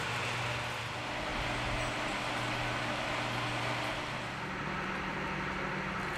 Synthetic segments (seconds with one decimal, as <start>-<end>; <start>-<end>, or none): none